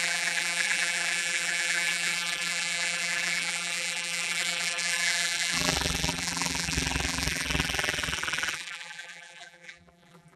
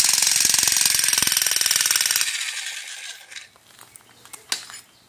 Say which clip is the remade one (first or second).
first